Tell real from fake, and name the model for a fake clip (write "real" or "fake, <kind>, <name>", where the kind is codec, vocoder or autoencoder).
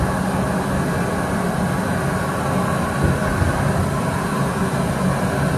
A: real